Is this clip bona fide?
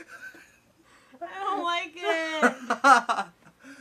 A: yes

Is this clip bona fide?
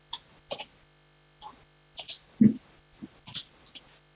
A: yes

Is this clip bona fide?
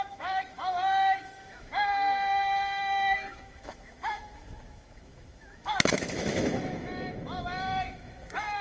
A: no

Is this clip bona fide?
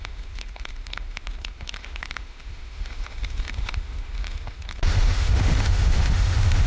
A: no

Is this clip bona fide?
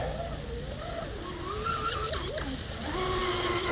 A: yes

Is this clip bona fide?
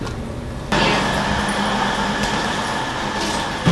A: yes